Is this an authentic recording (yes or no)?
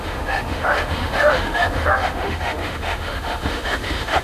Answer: no